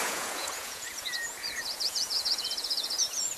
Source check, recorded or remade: remade